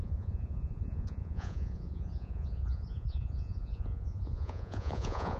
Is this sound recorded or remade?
remade